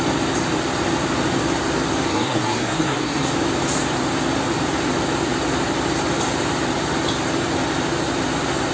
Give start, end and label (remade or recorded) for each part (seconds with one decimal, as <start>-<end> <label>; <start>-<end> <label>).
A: 0.0-2.1 recorded; 2.1-3.3 remade; 3.3-8.7 recorded